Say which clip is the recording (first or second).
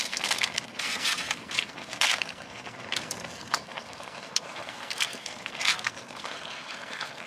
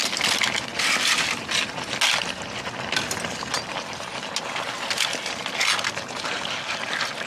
second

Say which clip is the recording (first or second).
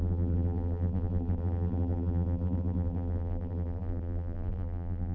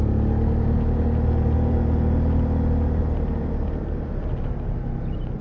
second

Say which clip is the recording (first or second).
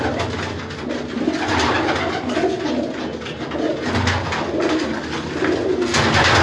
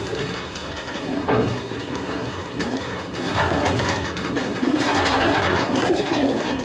first